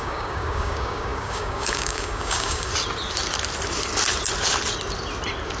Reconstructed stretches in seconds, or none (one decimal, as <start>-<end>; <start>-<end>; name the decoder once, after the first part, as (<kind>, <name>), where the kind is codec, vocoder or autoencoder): 0.0-2.7 (codec, DAC)